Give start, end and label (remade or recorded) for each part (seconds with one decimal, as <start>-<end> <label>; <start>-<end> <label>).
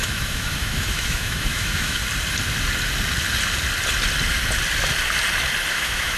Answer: 0.0-2.0 remade; 2.0-5.7 recorded; 5.7-6.2 remade